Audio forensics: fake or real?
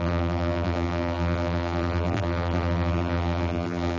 fake